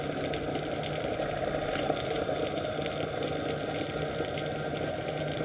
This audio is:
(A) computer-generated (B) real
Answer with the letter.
B